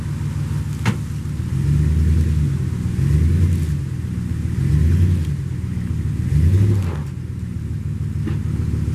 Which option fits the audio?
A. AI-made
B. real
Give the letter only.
B